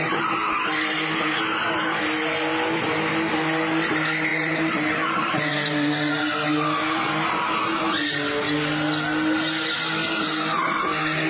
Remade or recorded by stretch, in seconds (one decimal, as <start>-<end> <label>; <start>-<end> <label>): 0.0-4.3 recorded; 4.3-6.2 remade; 6.2-11.3 recorded